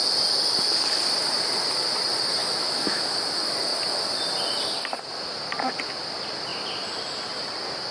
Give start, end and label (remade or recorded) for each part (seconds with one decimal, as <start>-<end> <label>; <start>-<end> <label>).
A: 0.0-2.4 recorded; 2.4-3.1 remade; 3.1-7.9 recorded